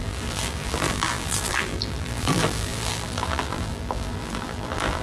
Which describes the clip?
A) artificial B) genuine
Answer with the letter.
A